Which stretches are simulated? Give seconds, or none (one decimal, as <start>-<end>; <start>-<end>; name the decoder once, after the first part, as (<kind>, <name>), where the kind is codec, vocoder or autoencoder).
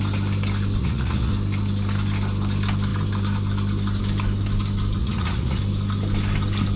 0.8-1.3 (vocoder, Vocos); 5.0-5.6